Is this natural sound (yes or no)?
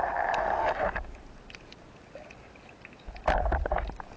yes